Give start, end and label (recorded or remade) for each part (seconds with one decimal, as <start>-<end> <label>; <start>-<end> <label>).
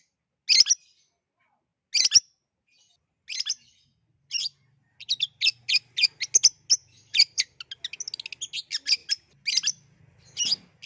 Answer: 0.0-6.8 recorded; 6.8-7.6 remade; 7.6-10.9 recorded